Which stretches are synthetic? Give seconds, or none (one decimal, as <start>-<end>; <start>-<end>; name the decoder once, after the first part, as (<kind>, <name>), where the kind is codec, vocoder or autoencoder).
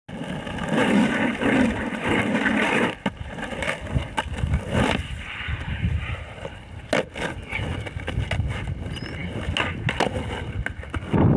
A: 0.8-6.0 (vocoder, BigVGAN v2)